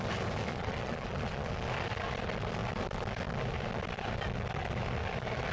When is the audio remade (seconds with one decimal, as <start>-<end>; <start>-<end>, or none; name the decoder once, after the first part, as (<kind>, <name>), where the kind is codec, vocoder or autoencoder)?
0.5-1.5 (vocoder, Vocos)